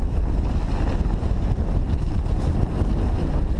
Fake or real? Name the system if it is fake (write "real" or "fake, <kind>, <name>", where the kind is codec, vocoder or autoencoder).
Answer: real